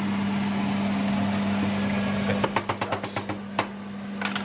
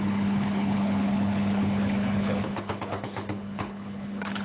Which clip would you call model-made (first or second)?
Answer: second